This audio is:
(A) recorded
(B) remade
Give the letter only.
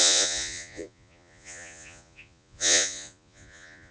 B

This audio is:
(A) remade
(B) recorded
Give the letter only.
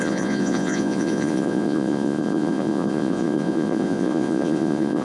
A